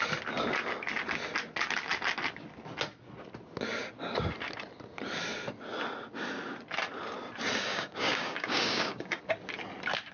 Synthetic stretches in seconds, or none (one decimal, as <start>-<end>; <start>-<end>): 7.7-9.2